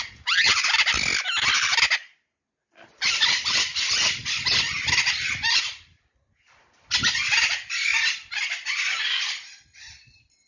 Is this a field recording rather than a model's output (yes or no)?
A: yes